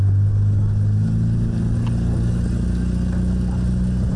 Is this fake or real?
real